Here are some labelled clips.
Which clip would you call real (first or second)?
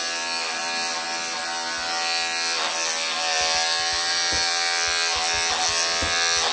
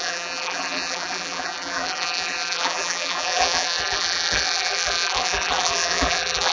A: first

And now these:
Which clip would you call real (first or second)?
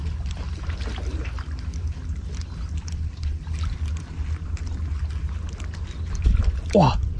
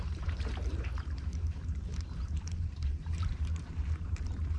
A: first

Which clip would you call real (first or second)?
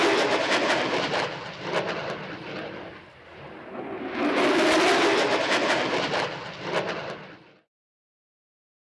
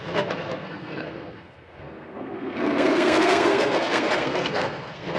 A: first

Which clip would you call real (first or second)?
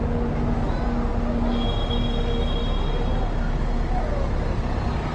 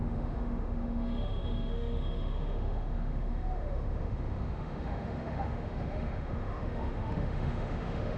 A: first